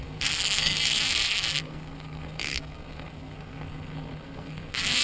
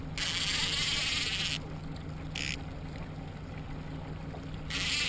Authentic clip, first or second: second